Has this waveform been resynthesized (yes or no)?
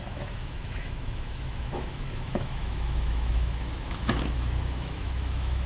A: yes